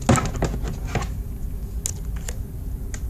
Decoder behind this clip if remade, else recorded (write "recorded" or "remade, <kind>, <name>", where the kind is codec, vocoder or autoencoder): recorded